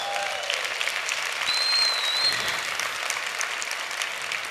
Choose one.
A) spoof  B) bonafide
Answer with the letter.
B